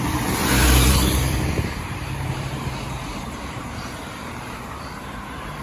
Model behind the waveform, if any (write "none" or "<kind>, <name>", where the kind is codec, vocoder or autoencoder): vocoder, BigVGAN v2